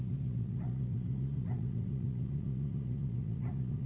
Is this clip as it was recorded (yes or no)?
no